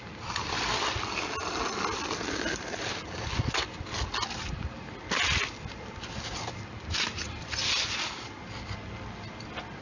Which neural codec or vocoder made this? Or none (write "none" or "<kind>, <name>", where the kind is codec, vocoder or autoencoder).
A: none